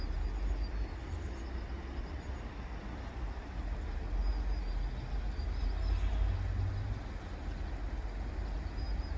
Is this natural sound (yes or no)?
yes